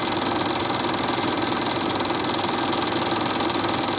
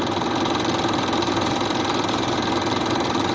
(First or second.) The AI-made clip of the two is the second